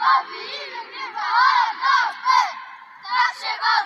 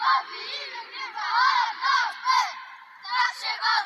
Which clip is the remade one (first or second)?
second